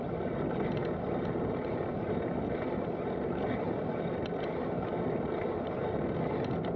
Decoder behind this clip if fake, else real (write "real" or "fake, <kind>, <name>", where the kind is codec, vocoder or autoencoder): real